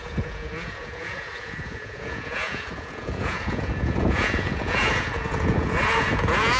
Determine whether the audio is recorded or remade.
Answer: remade